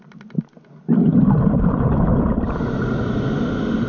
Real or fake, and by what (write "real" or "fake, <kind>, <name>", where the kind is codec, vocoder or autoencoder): real